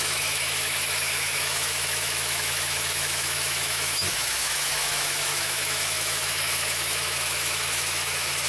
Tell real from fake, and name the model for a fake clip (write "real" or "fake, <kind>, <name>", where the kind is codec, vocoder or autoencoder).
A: fake, autoencoder, DAC-VAE